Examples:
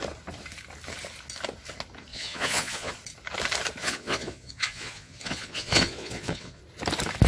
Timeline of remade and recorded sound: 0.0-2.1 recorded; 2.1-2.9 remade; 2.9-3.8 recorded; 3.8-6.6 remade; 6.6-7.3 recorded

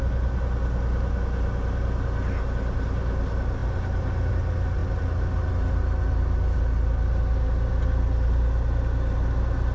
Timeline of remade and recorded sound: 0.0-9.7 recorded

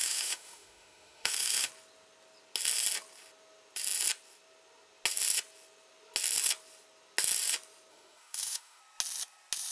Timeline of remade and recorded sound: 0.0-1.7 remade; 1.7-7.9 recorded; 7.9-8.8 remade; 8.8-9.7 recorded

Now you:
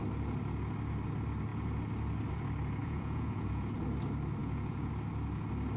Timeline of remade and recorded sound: 0.0-2.8 recorded; 2.8-3.7 remade; 3.7-4.4 recorded; 4.4-4.9 remade; 4.9-5.8 recorded